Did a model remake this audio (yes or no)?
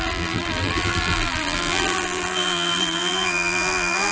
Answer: yes